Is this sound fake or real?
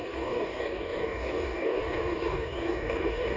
fake